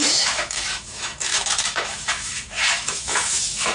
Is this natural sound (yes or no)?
no